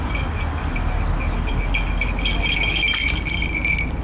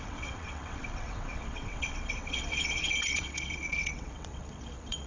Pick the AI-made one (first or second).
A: second